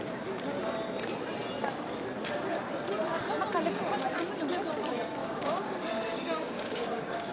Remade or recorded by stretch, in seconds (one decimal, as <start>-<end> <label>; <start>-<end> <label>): 0.0-5.2 recorded; 5.2-7.3 remade